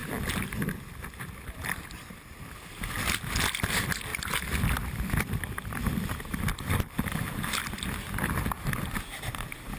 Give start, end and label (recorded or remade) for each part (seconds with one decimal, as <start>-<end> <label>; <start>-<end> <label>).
0.0-4.1 recorded; 4.1-9.1 remade; 9.1-9.8 recorded